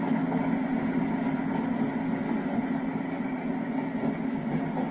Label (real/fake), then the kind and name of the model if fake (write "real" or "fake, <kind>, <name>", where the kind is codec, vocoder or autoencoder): real